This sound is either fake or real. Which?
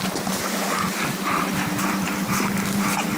real